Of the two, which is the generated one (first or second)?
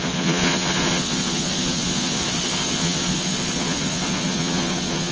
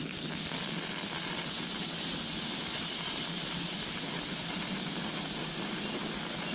first